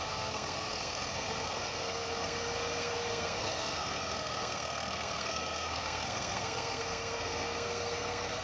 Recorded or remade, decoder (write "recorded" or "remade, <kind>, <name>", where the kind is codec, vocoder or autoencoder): remade, codec, SNAC